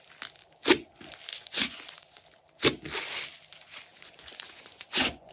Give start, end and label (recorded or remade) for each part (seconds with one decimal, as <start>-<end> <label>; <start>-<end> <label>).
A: 0.0-1.3 recorded; 1.3-2.2 remade; 2.2-3.9 recorded; 3.9-5.3 remade